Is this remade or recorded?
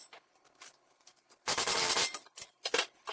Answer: remade